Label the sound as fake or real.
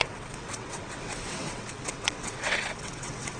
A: fake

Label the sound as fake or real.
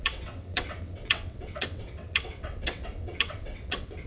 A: fake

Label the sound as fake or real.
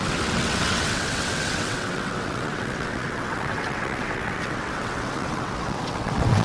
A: fake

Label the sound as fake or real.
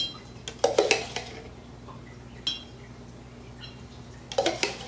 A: real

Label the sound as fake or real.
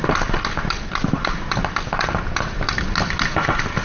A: real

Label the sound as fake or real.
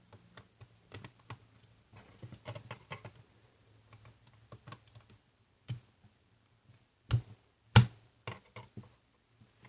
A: real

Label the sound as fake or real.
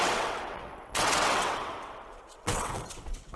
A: fake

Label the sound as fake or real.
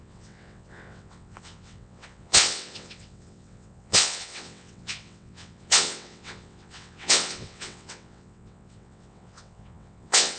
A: fake